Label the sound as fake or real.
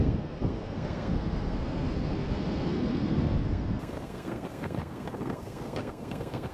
fake